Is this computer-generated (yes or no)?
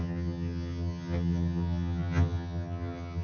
yes